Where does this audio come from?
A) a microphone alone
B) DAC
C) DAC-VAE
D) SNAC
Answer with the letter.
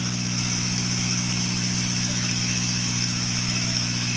C